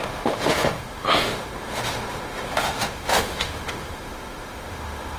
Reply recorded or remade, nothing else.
remade